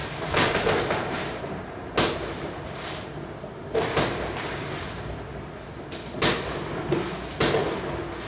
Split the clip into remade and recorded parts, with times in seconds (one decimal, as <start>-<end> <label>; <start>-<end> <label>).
0.0-1.4 remade; 1.4-8.3 recorded